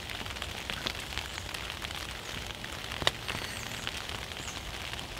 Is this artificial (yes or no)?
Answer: no